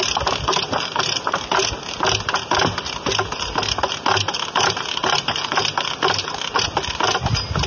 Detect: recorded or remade recorded